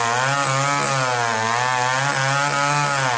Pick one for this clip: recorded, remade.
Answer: recorded